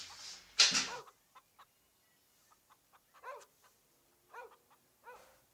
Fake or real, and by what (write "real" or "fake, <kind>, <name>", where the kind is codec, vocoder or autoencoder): real